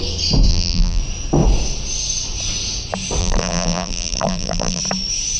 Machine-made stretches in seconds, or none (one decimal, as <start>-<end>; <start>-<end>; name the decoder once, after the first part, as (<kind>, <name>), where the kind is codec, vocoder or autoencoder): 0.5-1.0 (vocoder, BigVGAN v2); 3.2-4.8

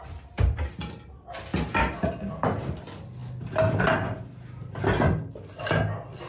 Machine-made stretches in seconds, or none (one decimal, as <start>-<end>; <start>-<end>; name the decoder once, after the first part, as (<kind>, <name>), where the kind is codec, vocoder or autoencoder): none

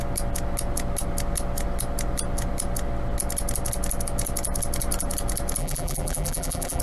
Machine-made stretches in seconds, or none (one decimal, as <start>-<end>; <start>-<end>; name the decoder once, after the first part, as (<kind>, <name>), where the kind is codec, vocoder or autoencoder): 5.6-6.8 (vocoder, BigVGAN v2)

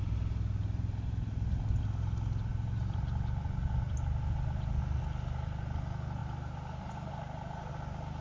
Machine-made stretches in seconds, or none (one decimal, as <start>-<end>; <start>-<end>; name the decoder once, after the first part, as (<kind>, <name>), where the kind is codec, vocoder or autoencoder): 6.2-7.7 (vocoder, BigVGAN v2)

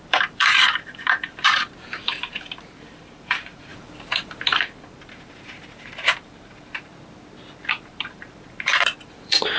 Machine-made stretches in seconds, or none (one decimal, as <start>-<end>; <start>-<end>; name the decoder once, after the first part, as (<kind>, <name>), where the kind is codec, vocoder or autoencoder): 0.0-6.9 (vocoder, BigVGAN v2); 7.8-9.6

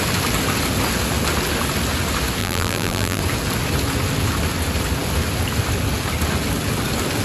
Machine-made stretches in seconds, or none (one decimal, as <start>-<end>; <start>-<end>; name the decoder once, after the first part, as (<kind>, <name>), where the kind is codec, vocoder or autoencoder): 2.4-3.2 (vocoder, BigVGAN v2)

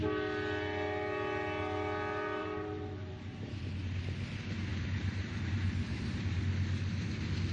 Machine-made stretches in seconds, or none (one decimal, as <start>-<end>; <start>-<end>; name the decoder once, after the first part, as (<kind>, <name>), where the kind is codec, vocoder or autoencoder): 2.4-3.6 (vocoder, BigVGAN v2); 4.7-6.4

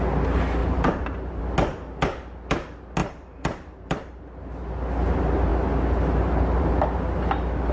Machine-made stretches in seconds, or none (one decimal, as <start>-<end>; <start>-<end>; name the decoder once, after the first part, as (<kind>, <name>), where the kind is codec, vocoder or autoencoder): 0.6-1.4 (vocoder, BigVGAN v2); 3.0-4.2